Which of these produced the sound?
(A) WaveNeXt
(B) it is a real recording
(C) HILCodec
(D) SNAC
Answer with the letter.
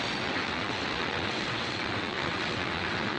A